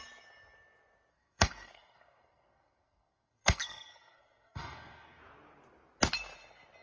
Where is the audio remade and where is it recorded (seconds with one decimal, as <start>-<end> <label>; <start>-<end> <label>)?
0.0-1.1 recorded; 1.1-5.2 remade; 5.2-6.8 recorded